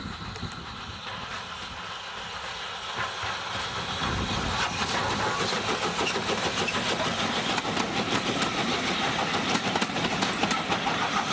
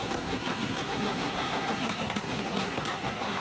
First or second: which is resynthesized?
second